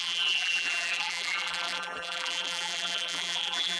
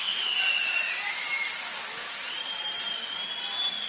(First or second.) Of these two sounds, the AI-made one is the first